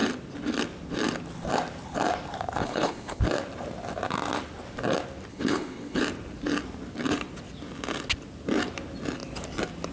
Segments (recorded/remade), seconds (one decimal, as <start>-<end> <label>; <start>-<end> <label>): 0.0-2.6 recorded; 2.6-3.2 remade; 3.2-5.3 recorded; 5.3-6.0 remade; 6.0-9.9 recorded